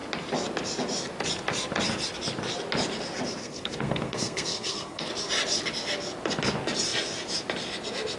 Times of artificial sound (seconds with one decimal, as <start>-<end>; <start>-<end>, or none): 3.4-5.1